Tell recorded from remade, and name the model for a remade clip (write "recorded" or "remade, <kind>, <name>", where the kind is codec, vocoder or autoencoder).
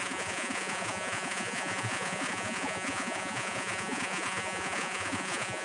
remade, vocoder, Vocos